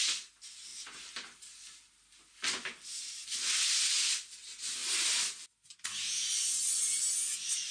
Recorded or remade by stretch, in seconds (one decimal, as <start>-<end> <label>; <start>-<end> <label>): 0.0-7.7 recorded